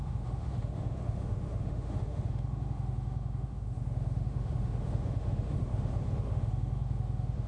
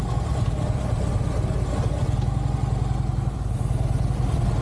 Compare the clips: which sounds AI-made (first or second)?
first